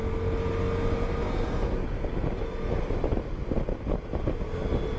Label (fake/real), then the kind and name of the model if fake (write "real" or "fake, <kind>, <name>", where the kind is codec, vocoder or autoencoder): real